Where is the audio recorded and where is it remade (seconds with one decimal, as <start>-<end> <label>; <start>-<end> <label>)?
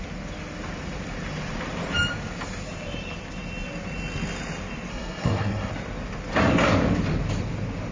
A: 0.0-4.9 recorded; 4.9-5.7 remade; 5.7-7.9 recorded